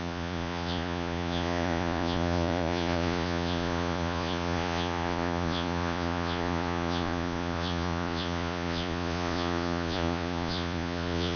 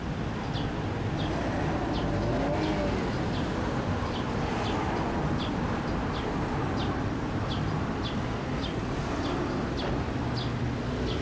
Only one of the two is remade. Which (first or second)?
first